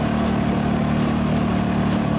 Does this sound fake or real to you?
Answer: real